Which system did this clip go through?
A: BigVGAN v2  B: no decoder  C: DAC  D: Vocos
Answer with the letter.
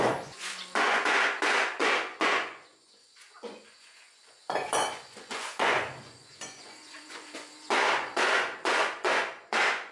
D